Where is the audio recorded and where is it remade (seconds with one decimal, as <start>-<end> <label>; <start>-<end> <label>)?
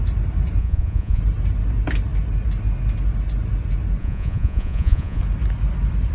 0.0-0.6 recorded; 0.6-1.2 remade; 1.2-4.0 recorded; 4.0-5.2 remade; 5.2-6.1 recorded